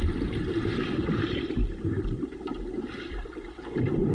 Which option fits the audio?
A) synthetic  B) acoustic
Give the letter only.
A